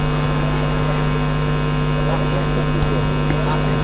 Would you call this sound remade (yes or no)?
no